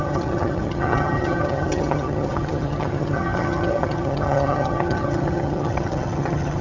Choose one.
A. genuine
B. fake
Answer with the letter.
B